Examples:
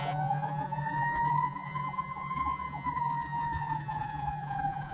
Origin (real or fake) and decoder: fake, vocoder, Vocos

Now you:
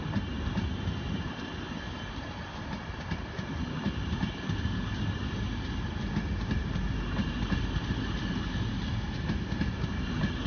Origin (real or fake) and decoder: real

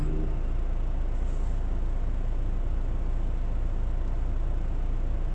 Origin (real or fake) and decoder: real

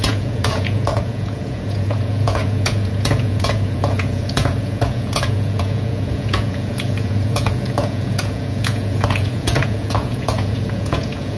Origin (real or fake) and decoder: fake, vocoder, Vocos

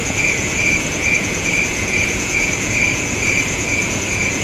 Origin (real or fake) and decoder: fake, vocoder, Vocos